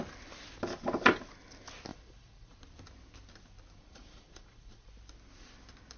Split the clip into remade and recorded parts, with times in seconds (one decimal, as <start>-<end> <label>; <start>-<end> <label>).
0.0-1.9 recorded; 1.9-2.6 remade; 2.6-3.8 recorded; 3.8-4.9 remade; 4.9-6.0 recorded